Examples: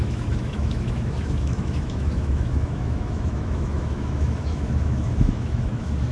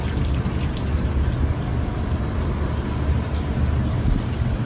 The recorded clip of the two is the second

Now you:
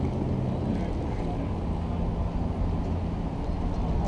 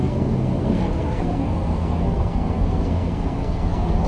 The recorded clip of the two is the first